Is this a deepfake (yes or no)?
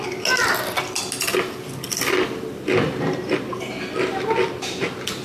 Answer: no